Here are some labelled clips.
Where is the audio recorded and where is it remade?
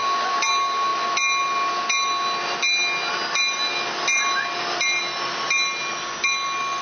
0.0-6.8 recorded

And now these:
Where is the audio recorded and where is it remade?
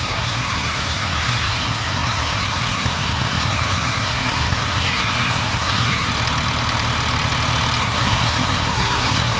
0.0-6.1 remade; 6.1-7.8 recorded; 7.8-9.4 remade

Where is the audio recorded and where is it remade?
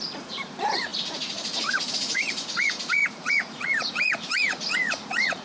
0.0-5.4 remade